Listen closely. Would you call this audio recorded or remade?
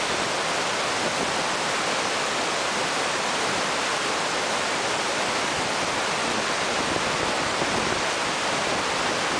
recorded